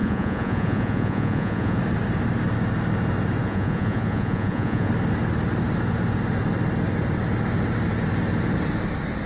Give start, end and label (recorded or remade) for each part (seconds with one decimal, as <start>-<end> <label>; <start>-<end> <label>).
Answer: 0.0-1.8 remade; 1.8-3.4 recorded; 3.4-4.9 remade; 4.9-9.3 recorded